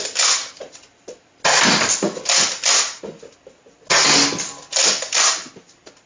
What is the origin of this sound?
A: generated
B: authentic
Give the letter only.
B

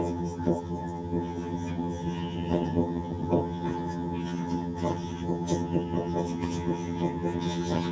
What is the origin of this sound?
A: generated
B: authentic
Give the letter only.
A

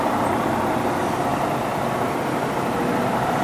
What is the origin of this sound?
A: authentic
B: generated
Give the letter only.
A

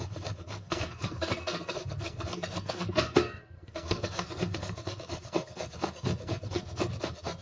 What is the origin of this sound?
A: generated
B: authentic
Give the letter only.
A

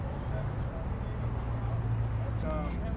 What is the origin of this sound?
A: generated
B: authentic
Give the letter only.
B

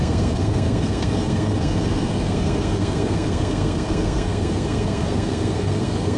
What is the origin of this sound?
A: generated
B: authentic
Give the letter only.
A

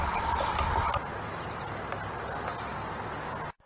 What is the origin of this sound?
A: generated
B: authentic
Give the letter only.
B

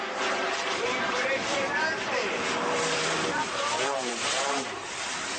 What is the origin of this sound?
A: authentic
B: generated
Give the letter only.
B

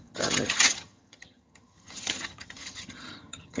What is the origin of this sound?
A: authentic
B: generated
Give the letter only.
B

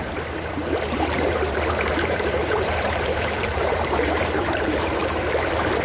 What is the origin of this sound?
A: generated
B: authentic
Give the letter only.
A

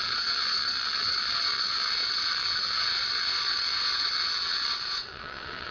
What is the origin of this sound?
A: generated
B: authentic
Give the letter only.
A